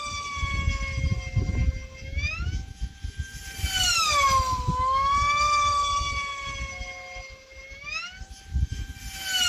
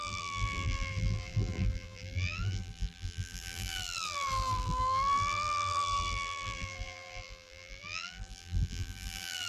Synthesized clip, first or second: second